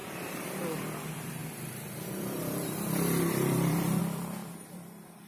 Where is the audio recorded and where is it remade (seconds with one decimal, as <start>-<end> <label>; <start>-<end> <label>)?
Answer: 0.0-0.5 remade; 0.5-1.4 recorded; 1.4-4.0 remade; 4.0-4.4 recorded; 4.4-5.3 remade

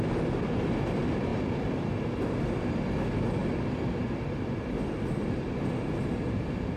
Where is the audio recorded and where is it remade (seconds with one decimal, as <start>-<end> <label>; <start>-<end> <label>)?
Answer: 0.0-1.3 recorded; 1.3-2.2 remade; 2.2-6.8 recorded